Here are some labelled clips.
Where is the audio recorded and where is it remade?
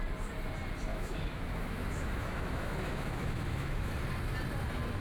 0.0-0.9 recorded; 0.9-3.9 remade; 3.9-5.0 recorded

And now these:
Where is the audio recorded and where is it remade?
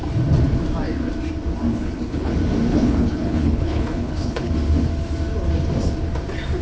0.0-1.7 recorded; 1.7-2.3 remade; 2.3-2.7 recorded; 2.7-4.5 remade; 4.5-6.6 recorded